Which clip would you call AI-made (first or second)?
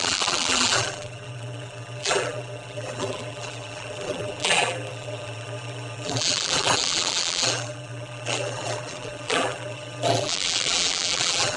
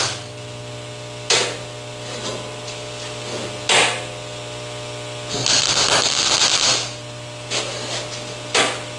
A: first